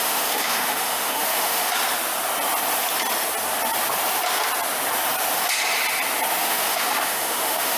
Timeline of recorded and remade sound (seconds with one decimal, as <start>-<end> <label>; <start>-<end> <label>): 0.0-1.7 remade; 1.7-6.4 recorded; 6.4-7.8 remade